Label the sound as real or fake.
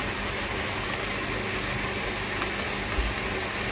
real